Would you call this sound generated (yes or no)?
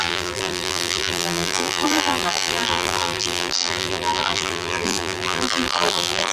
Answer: yes